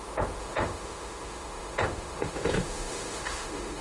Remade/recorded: remade